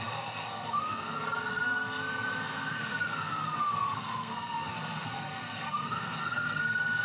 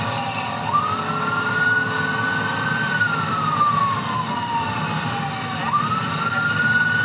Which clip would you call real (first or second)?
second